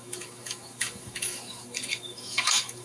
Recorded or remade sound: remade